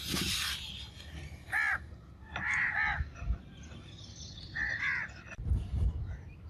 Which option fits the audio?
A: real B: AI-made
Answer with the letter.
A